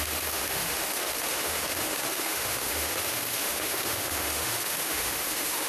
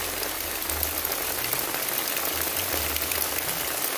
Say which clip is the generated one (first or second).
first